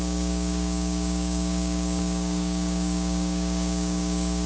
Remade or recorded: remade